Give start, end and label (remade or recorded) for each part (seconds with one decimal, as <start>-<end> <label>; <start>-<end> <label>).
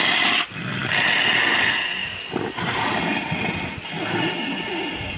0.0-5.2 recorded